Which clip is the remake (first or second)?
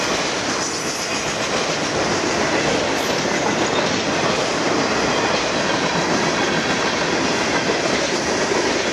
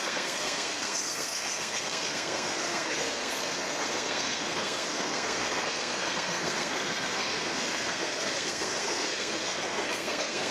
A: second